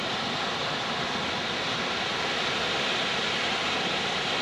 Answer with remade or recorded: remade